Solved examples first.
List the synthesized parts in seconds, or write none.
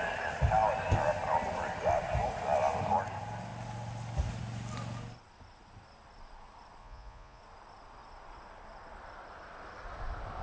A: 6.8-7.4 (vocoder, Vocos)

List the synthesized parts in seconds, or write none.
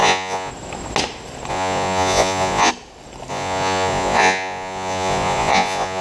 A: 0.0-0.5 (vocoder, Vocos); 1.5-2.7; 3.3-6.0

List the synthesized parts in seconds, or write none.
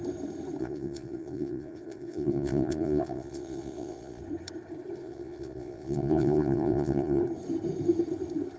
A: 0.6-4.2 (vocoder, Vocos); 5.0-7.2